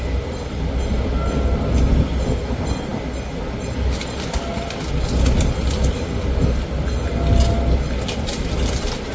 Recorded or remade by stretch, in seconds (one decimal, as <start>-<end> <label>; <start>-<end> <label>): 0.0-9.1 recorded